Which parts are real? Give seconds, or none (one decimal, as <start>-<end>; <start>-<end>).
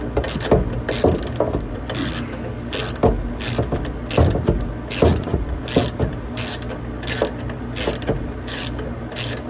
0.0-5.1; 5.6-9.5